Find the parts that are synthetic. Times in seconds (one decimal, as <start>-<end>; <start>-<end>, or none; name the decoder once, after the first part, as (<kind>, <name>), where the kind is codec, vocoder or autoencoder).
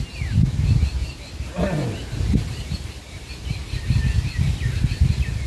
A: none